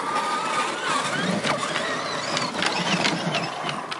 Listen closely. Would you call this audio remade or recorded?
recorded